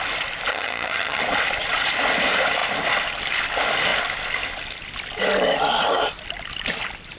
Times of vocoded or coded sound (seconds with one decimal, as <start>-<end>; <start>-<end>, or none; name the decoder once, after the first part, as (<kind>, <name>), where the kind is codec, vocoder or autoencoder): 0.5-1.2 (vocoder, HiFi-GAN)